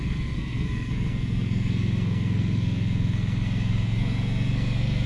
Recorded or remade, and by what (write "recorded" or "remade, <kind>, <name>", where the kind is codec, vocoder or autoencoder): remade, codec, SNAC